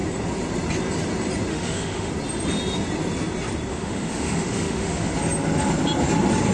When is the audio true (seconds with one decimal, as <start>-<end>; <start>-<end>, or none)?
0.0-1.5; 2.1-3.7; 5.1-6.5